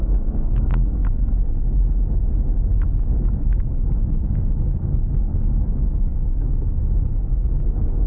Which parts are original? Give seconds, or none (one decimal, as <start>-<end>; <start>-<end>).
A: 1.0-3.6